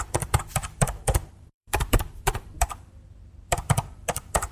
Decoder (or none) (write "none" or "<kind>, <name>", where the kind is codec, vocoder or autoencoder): vocoder, BigVGAN v2